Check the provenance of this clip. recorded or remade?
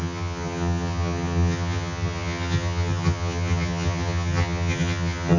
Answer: remade